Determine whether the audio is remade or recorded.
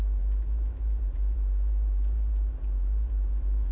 remade